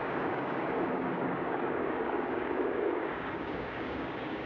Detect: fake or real fake